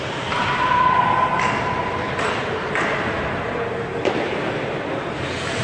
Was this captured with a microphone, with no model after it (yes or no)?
yes